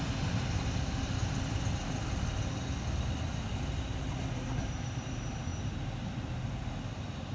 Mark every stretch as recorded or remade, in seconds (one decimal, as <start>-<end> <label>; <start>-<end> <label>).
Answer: 0.0-7.3 recorded